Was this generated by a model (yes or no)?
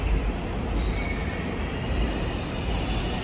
no